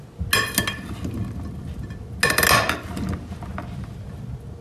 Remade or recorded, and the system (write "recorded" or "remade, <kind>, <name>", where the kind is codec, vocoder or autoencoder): recorded